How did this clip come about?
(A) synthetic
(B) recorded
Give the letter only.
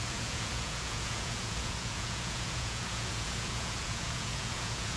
A